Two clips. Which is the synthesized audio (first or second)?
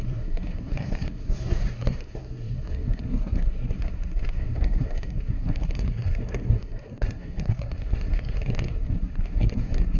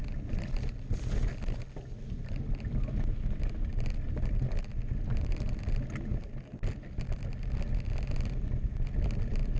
first